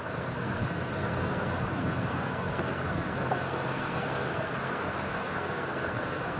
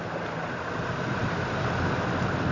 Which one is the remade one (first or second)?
first